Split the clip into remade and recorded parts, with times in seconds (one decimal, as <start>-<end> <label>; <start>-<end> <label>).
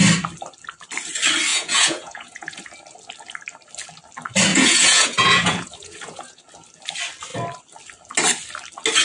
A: 0.0-1.5 recorded; 1.5-2.6 remade; 2.6-4.5 recorded; 4.5-6.4 remade; 6.4-9.0 recorded